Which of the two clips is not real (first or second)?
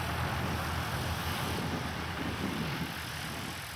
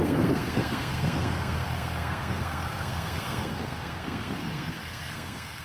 second